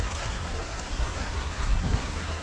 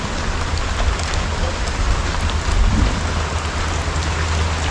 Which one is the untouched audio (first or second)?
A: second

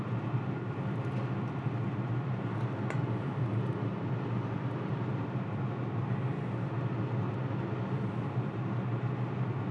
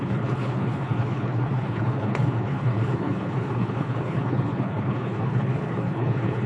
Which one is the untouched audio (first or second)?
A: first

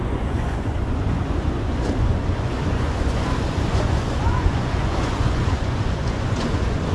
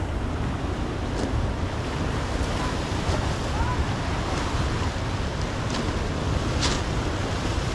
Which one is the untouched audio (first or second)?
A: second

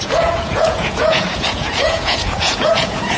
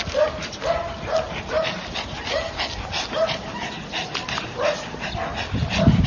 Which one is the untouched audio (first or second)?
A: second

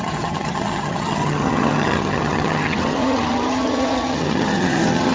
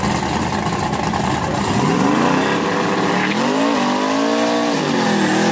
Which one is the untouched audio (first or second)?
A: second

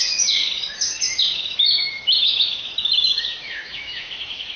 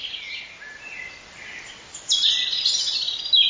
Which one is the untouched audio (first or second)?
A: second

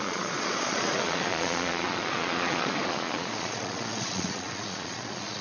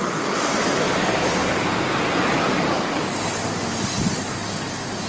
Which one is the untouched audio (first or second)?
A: second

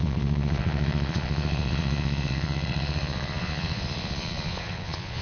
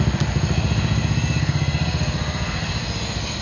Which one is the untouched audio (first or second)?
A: second